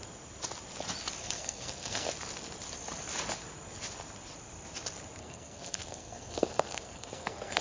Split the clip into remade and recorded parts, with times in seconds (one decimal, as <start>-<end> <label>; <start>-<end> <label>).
0.0-1.2 recorded; 1.2-2.1 remade; 2.1-5.2 recorded; 5.2-7.6 remade